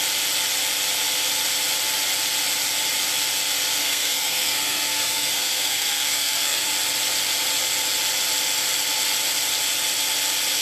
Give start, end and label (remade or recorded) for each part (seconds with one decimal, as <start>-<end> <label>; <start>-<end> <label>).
0.0-3.8 recorded; 3.8-6.7 remade; 6.7-10.6 recorded